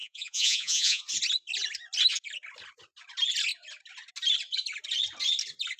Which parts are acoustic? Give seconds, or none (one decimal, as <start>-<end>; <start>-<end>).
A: 1.0-5.8